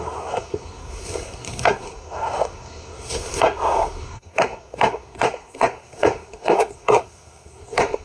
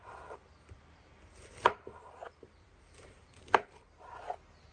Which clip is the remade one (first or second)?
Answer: first